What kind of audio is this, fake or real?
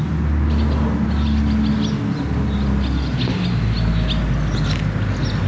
real